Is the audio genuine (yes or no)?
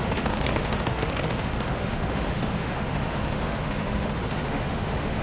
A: no